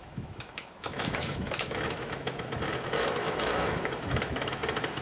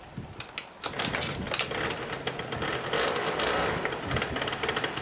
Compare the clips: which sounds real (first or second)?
second